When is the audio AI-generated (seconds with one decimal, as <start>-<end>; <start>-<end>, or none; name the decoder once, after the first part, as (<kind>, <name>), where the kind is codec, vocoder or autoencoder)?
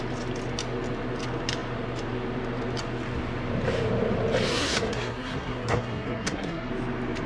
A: 4.5-6.7 (codec, SNAC)